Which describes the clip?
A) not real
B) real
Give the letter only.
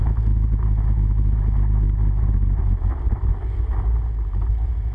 B